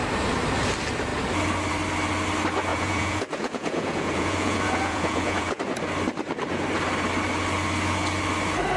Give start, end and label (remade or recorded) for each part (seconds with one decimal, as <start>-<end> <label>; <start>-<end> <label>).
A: 0.0-2.7 recorded; 2.7-5.6 remade; 5.6-8.8 recorded